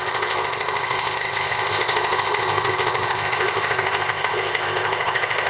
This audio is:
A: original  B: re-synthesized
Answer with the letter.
B